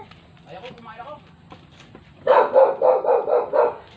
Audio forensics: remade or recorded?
recorded